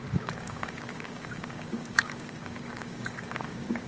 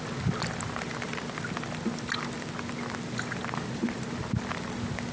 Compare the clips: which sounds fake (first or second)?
first